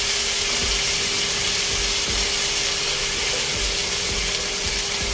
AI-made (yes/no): no